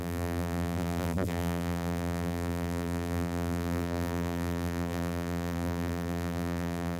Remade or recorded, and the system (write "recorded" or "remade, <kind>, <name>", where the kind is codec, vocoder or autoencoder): remade, vocoder, BigVGAN v2